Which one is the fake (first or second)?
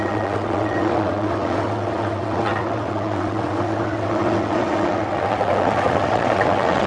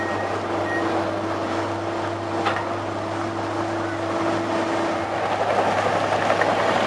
first